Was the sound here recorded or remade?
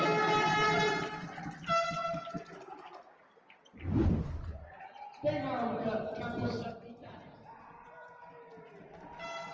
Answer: recorded